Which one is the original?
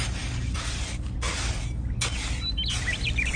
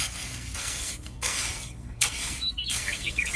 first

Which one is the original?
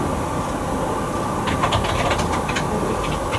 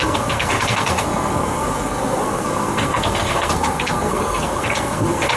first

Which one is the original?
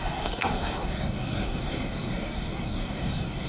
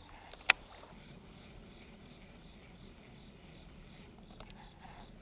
second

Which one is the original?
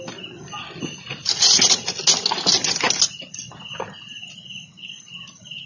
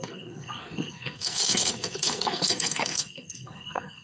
first